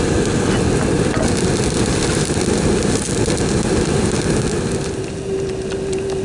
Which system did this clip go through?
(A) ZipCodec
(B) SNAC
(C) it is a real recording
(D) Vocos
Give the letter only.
C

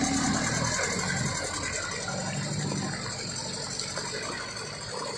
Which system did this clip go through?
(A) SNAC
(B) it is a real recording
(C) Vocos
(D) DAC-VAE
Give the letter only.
B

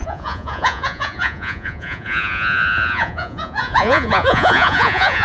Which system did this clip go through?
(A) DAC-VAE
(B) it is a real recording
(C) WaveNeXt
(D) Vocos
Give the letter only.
D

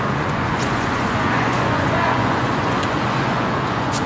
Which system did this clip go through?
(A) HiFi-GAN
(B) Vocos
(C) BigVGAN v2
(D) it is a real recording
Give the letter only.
B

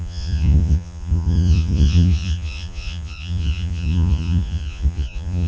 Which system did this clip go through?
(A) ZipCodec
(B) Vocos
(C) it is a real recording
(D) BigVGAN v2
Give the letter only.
B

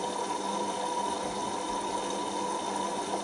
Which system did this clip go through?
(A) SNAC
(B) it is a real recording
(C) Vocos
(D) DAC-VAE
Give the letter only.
B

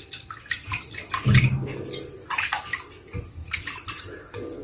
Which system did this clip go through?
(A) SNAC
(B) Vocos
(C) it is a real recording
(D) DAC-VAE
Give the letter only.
C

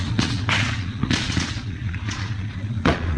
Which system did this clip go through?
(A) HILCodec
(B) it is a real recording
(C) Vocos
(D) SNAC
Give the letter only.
C